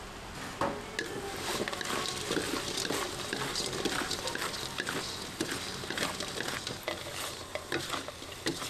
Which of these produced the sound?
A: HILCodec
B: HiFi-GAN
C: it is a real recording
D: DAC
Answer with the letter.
C